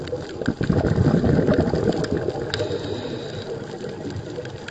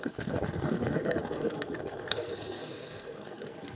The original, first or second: first